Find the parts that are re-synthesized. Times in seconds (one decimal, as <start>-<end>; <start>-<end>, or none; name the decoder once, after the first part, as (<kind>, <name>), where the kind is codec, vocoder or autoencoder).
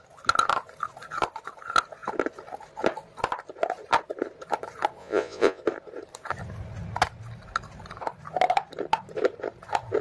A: 5.0-5.6 (vocoder, Vocos)